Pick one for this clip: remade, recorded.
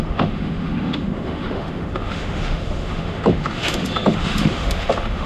remade